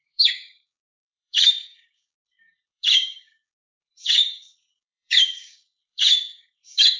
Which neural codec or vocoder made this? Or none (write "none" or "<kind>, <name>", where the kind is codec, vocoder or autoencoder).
codec, DAC